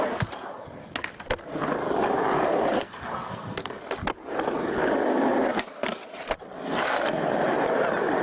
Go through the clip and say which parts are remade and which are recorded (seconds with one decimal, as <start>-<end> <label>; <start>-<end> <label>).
0.0-2.8 recorded; 2.8-3.7 remade; 3.7-8.2 recorded